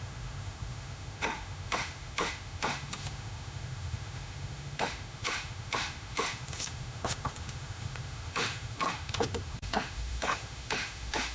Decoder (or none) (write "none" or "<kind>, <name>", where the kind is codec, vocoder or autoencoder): autoencoder, DAC-VAE